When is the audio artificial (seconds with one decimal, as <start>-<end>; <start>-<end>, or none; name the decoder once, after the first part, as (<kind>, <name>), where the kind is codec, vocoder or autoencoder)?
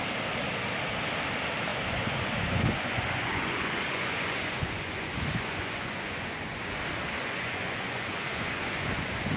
1.7-6.8 (vocoder, Vocos); 7.2-9.4